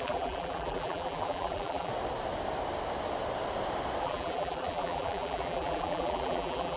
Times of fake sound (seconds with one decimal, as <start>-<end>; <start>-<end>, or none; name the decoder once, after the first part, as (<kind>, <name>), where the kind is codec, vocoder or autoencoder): 0.0-1.9 (vocoder, BigVGAN v2); 4.0-6.8